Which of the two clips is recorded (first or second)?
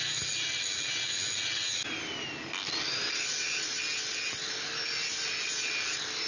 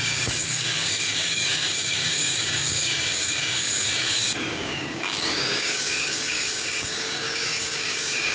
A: first